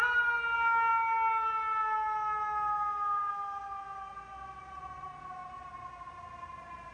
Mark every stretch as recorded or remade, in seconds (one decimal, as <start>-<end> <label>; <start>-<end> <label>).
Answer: 0.0-6.9 recorded